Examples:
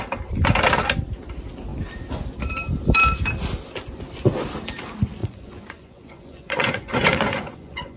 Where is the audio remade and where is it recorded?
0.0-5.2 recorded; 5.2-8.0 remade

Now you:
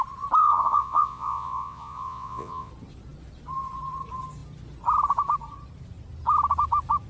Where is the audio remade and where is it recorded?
0.0-0.4 recorded; 0.4-2.7 remade; 2.7-7.1 recorded

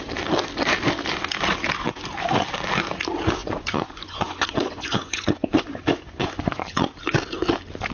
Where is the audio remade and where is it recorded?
0.0-3.4 recorded; 3.4-6.6 remade; 6.6-7.9 recorded

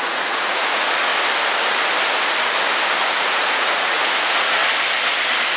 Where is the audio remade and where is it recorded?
0.0-1.1 remade; 1.1-3.0 recorded; 3.0-4.6 remade; 4.6-5.6 recorded